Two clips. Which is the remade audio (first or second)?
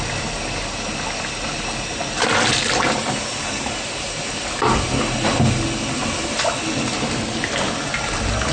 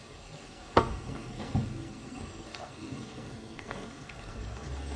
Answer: second